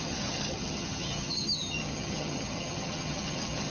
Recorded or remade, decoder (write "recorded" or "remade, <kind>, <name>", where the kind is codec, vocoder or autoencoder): remade, vocoder, HiFi-GAN